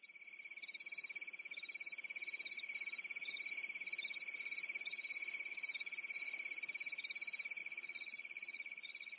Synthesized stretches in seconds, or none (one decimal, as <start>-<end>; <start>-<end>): 7.6-9.2